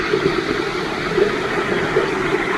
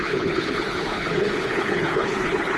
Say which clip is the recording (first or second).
first